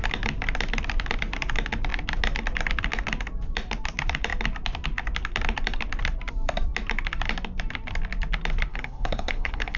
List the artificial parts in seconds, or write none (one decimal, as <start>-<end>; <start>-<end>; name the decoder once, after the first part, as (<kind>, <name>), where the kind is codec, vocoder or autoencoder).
8.7-9.8 (codec, HILCodec)